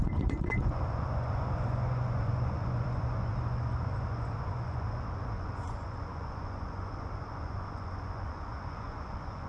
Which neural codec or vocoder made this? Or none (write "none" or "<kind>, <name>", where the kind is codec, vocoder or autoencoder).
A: vocoder, Vocos